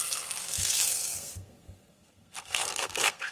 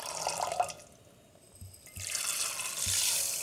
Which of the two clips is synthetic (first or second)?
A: first